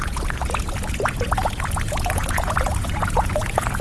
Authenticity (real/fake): fake